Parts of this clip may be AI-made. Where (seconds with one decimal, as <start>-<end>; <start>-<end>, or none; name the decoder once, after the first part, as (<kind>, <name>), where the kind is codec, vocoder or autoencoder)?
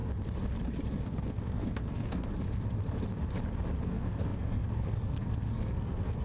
0.9-2.3 (codec, SNAC); 3.8-6.2